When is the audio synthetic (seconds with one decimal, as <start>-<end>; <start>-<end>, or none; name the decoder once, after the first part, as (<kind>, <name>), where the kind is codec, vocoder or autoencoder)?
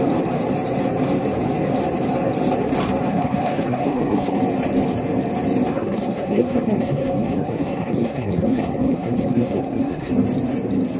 3.1-4.4 (codec, SNAC); 5.7-10.1